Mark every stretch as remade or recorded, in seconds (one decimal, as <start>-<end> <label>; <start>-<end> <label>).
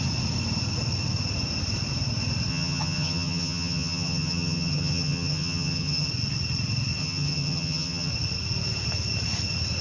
0.0-2.5 recorded; 2.5-6.1 remade; 6.1-7.0 recorded; 7.0-8.1 remade; 8.1-9.8 recorded